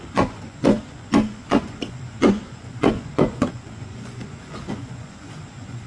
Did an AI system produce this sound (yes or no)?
yes